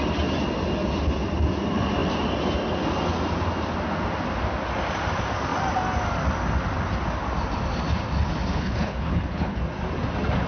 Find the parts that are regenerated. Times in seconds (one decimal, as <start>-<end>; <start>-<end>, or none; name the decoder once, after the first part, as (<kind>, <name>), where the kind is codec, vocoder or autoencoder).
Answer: 8.5-9.6 (codec, HILCodec)